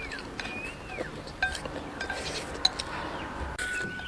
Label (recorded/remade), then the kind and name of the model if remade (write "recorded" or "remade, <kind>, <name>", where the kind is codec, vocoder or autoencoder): recorded